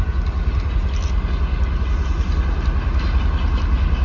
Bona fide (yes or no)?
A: yes